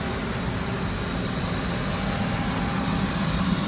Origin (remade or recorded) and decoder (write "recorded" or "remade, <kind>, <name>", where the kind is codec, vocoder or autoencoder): recorded